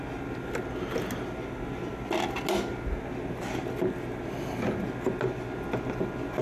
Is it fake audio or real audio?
real